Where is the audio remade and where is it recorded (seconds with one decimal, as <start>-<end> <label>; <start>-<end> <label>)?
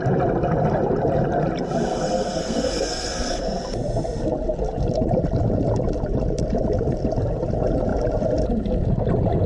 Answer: 0.0-1.9 recorded; 1.9-3.4 remade; 3.4-9.5 recorded